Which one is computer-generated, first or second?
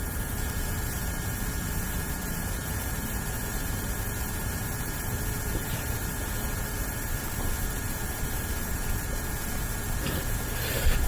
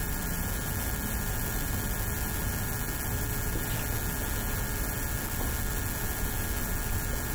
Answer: first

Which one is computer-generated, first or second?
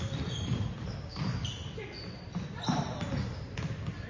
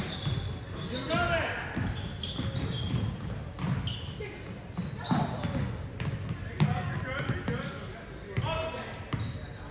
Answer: first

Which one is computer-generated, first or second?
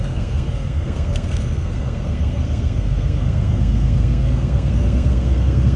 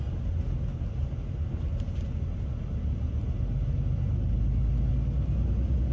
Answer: first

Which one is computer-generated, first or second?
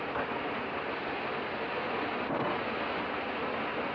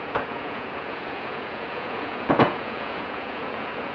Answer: second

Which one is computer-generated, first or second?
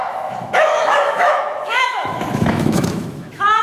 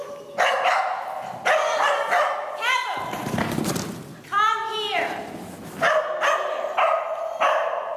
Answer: first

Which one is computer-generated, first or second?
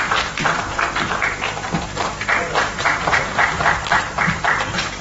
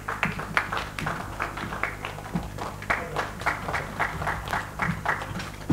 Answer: first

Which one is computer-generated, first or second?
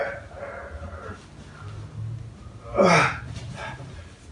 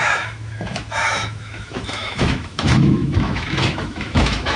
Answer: second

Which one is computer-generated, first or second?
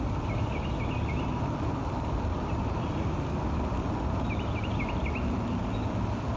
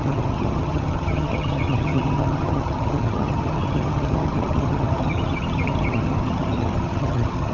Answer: second